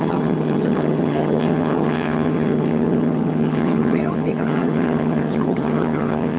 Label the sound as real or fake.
fake